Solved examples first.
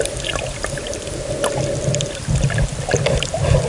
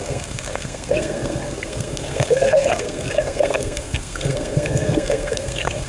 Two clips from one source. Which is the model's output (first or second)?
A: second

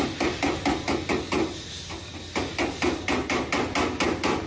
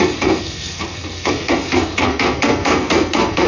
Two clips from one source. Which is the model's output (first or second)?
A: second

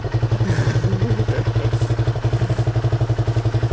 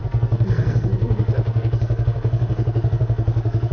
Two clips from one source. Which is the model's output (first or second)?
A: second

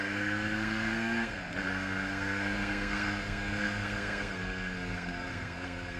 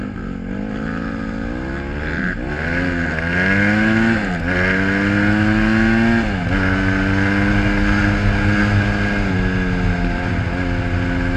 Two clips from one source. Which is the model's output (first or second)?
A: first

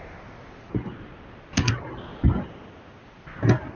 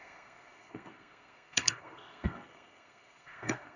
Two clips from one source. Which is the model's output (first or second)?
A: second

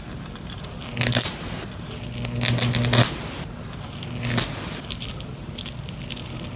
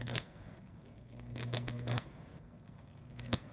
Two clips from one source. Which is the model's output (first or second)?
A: second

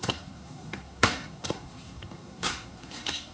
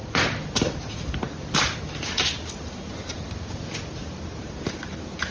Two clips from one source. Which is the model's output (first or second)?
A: first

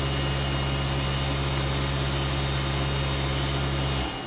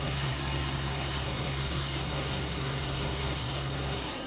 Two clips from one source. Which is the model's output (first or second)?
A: second